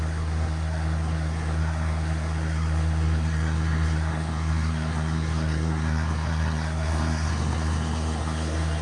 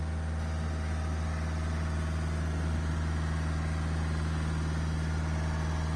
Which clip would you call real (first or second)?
second